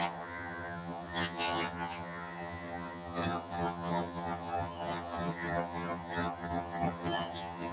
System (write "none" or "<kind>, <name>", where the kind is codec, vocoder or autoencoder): vocoder, HiFi-GAN